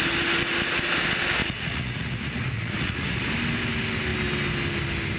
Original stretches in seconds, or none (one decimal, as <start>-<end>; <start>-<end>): 0.0-1.4; 3.2-5.2